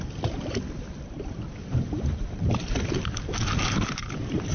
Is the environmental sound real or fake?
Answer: real